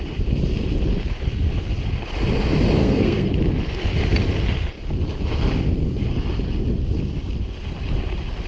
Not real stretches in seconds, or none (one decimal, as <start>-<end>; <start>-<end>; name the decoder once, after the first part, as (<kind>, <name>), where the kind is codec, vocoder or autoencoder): 2.8-3.3 (codec, SNAC)